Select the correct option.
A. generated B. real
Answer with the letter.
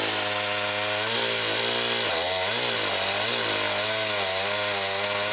B